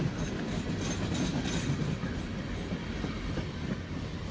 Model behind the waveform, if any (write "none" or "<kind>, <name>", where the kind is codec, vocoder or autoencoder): none